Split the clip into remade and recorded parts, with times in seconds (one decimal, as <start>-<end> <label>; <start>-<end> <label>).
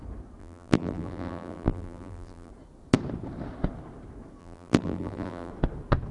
0.0-0.4 recorded; 0.4-2.5 remade; 2.5-4.4 recorded; 4.4-5.5 remade; 5.5-6.1 recorded